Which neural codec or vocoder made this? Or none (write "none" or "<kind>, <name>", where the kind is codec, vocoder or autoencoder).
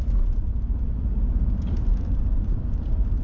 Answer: vocoder, BigVGAN v2